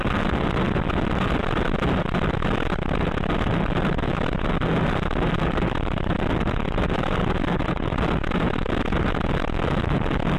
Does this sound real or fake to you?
real